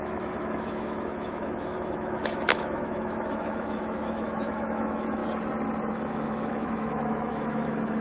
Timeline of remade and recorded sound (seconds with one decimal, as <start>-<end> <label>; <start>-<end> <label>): 0.0-5.2 remade; 5.2-5.9 recorded; 5.9-8.0 remade